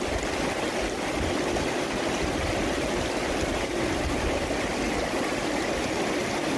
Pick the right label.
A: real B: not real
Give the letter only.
A